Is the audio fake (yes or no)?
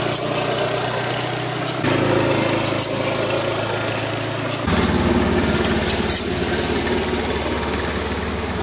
no